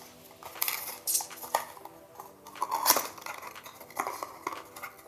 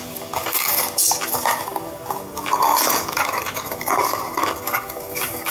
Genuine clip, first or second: first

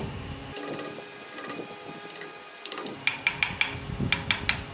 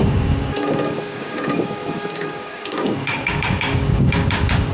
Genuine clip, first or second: first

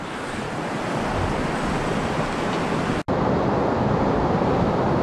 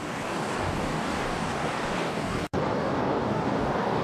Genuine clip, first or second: first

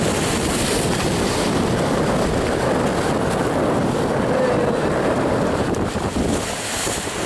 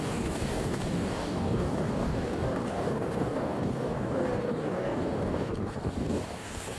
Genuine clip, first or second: first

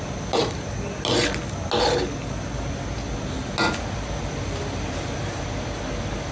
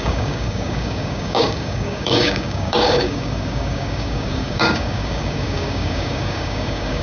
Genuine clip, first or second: first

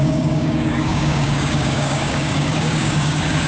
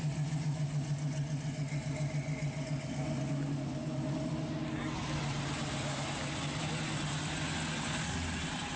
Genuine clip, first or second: second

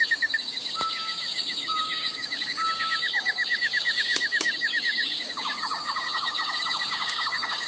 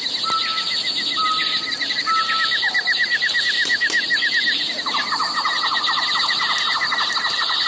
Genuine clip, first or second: second